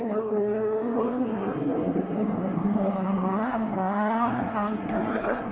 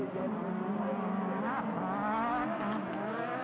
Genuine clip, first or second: second